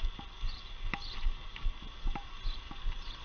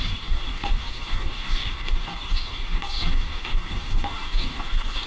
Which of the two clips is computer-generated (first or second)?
second